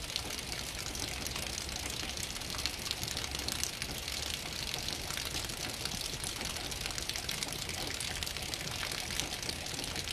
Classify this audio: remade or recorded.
recorded